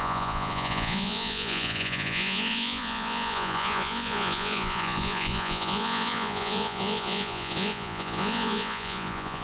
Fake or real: fake